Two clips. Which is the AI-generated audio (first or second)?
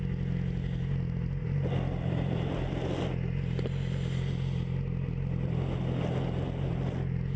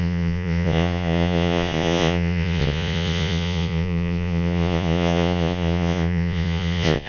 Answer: second